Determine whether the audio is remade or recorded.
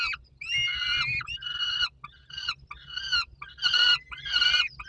recorded